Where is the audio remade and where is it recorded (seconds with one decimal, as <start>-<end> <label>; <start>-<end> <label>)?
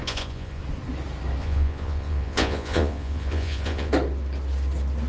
0.0-0.6 remade; 0.6-1.4 recorded; 1.4-3.9 remade; 3.9-5.1 recorded